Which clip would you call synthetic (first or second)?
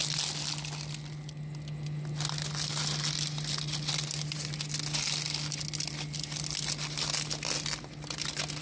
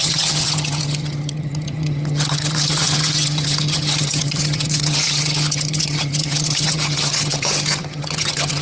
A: second